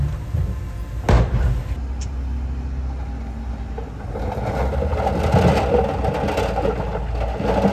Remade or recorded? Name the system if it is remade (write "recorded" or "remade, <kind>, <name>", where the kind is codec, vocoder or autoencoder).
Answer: recorded